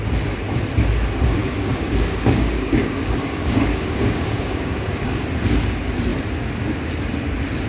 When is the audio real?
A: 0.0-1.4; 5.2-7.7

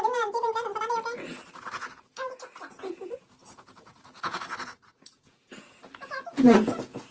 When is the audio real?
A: 0.7-1.5